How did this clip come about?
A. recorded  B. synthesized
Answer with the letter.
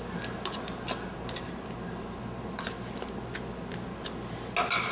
A